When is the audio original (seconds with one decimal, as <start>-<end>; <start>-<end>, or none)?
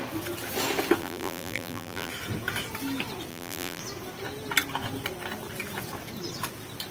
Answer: 0.0-1.0; 2.1-3.3; 3.8-6.9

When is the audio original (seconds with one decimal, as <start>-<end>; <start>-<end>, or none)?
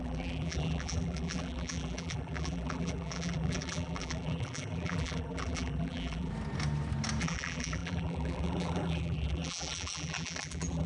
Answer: 6.3-7.2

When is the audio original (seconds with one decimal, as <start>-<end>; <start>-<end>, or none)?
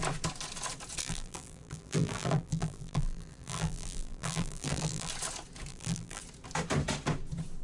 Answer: 0.0-1.0; 5.1-5.7; 6.2-7.6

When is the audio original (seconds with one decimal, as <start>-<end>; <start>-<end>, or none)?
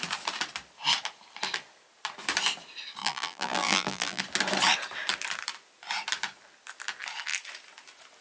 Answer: 0.0-3.0; 4.2-8.2